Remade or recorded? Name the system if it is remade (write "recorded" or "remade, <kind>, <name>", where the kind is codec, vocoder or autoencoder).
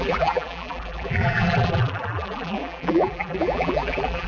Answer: remade, vocoder, BigVGAN v2